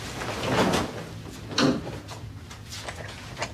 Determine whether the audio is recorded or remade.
recorded